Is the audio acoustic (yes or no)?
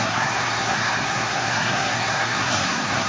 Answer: no